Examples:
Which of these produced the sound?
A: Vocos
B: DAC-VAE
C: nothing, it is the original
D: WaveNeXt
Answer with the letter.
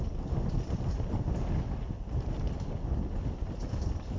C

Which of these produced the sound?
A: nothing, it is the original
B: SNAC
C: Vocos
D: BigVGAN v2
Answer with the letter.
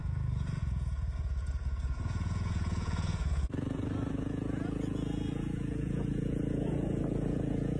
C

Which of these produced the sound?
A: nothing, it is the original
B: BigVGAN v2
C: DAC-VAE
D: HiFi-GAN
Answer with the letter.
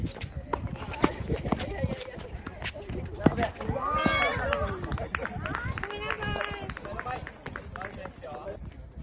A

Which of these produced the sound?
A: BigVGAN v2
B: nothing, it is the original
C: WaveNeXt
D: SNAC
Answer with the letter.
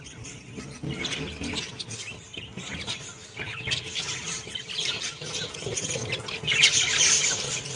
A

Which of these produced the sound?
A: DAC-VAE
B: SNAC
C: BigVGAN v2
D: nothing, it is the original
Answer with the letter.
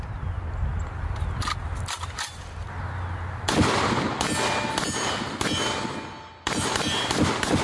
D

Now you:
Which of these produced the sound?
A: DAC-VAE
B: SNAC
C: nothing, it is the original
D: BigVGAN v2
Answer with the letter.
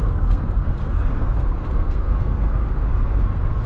B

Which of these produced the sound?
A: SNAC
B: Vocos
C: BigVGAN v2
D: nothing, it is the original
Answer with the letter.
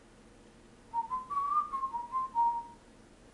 D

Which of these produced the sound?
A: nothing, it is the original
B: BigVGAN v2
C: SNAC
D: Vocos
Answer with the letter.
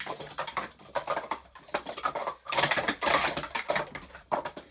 A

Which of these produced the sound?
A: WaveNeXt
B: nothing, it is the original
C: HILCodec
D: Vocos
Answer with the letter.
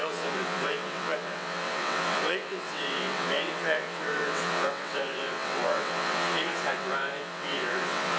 A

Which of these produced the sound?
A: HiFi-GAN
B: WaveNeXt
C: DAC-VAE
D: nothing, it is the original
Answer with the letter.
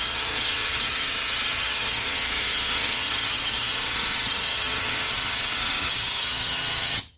A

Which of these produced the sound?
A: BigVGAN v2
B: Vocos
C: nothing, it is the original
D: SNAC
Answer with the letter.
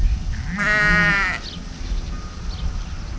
C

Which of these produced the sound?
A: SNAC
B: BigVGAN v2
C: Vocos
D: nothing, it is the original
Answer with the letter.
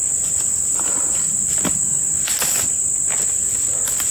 D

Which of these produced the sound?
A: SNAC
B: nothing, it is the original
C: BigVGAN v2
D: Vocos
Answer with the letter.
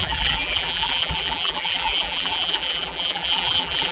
C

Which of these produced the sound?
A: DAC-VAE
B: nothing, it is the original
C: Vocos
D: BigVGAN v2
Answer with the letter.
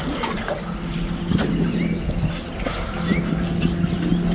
B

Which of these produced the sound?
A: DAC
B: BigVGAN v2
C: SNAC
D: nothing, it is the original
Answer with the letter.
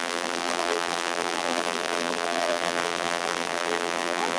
B